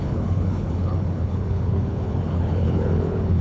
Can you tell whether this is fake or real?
fake